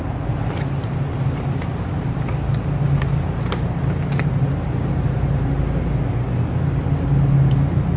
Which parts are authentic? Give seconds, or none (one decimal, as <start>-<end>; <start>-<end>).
0.0-0.4; 4.4-8.0